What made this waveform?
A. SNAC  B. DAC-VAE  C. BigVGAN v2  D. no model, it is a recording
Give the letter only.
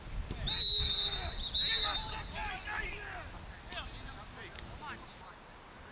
D